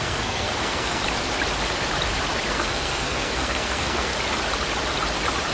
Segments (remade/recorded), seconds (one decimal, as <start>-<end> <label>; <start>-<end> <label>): 0.0-1.0 remade; 1.0-2.5 recorded; 2.5-4.1 remade; 4.1-5.5 recorded